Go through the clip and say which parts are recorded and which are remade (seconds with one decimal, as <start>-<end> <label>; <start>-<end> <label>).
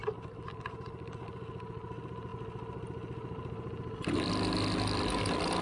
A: 0.0-5.6 recorded